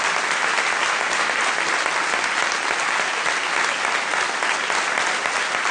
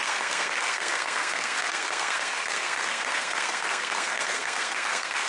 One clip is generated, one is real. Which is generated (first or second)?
second